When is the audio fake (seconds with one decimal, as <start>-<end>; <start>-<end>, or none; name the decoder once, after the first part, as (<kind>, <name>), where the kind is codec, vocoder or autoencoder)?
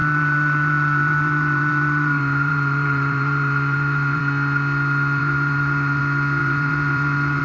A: 0.0-4.2 (vocoder, BigVGAN v2); 5.2-6.0; 6.4-7.4